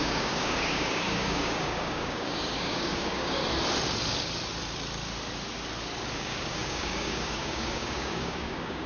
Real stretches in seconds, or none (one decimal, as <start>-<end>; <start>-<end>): 3.4-6.1